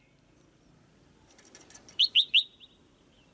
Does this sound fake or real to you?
real